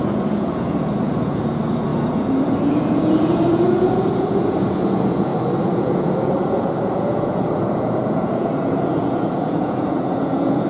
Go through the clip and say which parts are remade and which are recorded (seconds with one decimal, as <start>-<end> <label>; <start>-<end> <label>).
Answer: 0.0-5.3 remade; 5.3-5.8 recorded; 5.8-10.7 remade